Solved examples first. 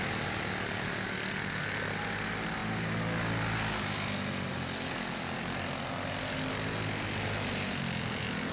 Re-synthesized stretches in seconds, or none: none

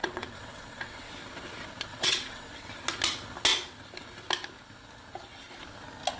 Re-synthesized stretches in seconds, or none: 0.0-1.1 (vocoder, WaveNeXt); 1.9-2.5

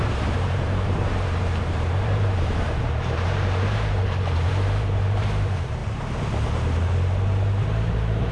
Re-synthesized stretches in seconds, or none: 0.0-5.8 (vocoder, BigVGAN v2); 7.9-8.3